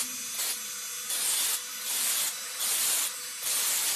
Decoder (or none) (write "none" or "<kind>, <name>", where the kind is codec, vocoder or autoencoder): none